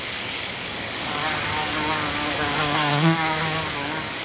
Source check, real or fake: fake